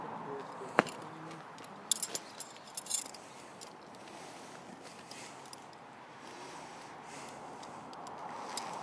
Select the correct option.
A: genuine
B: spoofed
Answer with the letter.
A